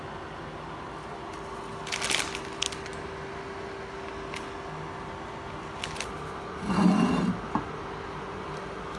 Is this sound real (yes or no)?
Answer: yes